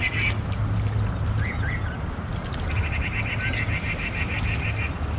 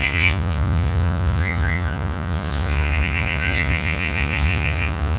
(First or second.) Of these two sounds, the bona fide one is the first